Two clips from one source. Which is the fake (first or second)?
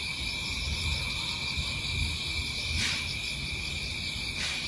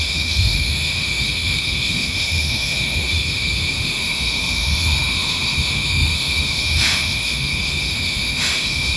second